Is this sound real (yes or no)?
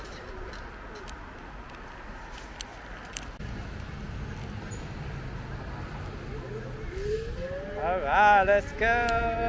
yes